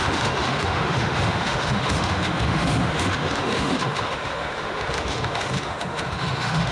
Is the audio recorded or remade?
remade